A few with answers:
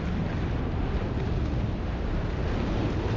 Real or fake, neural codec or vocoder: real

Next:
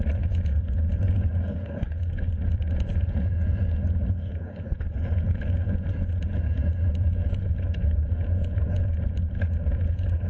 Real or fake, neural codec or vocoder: fake, vocoder, Vocos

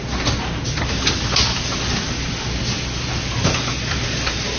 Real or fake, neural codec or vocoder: real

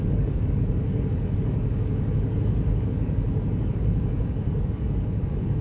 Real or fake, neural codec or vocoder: fake, codec, DAC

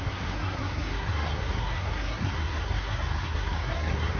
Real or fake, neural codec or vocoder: fake, codec, SNAC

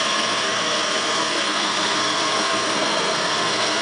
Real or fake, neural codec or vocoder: fake, codec, SNAC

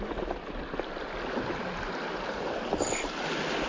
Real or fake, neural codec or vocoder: real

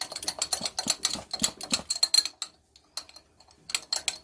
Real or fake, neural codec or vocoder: real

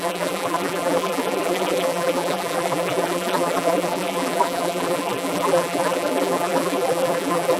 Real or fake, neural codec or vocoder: fake, vocoder, BigVGAN v2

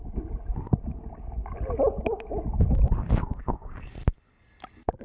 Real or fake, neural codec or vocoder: real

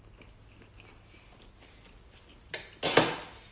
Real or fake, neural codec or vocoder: real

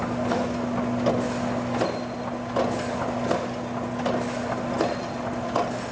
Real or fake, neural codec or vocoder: real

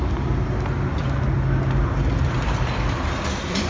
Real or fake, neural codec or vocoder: real